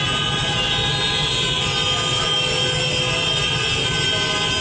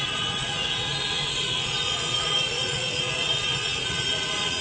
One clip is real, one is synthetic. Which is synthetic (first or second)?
second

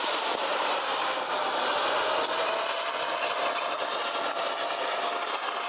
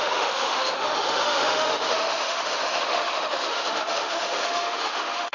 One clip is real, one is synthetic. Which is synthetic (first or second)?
second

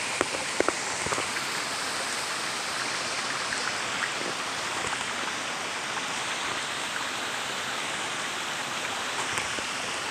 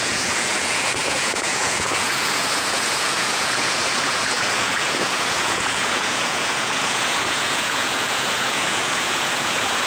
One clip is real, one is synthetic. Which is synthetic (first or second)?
second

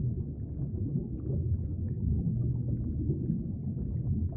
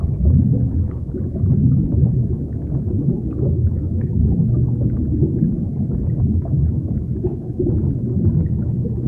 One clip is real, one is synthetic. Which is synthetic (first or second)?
second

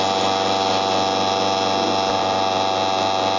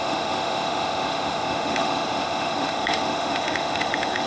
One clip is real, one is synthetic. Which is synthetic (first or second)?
second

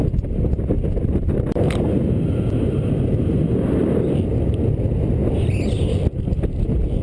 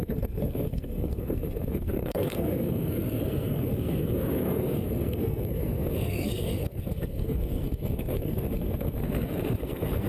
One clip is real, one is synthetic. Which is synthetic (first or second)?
second